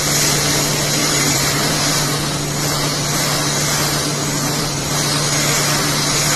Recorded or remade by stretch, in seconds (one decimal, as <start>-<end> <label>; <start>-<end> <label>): 0.0-1.0 recorded; 1.0-1.9 remade; 1.9-4.2 recorded; 4.2-4.9 remade; 4.9-6.4 recorded